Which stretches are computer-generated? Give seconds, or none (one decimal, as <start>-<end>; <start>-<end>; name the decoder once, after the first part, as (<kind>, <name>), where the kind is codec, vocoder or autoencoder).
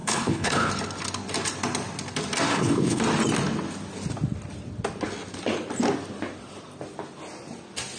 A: 0.0-0.7 (codec, HILCodec); 2.5-3.0